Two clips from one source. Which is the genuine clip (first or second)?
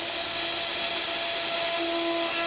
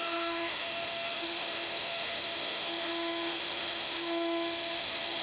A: first